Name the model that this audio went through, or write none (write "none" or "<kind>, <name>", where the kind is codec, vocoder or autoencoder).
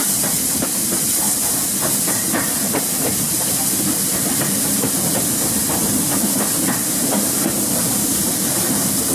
vocoder, BigVGAN v2